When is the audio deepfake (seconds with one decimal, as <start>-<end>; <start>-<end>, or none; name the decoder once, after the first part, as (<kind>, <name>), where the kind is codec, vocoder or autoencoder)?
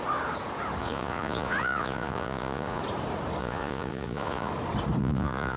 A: 0.8-2.8 (vocoder, Vocos); 3.4-4.5; 5.0-5.6